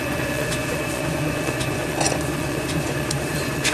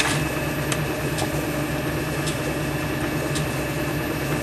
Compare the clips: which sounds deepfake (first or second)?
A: first